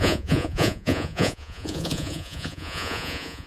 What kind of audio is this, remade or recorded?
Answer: remade